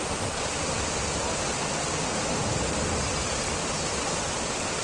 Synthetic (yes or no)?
no